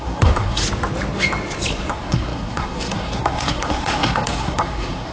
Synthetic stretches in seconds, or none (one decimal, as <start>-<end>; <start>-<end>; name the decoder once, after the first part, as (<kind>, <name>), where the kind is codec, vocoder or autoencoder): 0.0-0.6 (codec, SNAC); 1.9-5.1